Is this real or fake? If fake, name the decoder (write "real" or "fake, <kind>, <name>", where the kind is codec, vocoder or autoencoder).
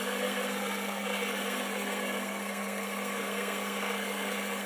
fake, codec, SNAC